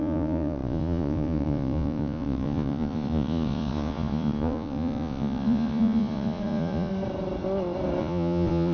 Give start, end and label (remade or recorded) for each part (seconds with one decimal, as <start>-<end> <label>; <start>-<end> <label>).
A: 0.0-6.9 remade; 6.9-8.0 recorded; 8.0-8.7 remade